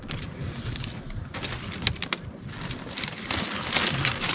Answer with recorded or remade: recorded